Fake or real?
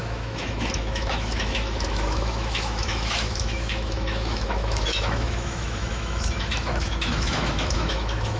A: fake